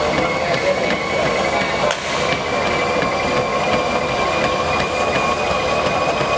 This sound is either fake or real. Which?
real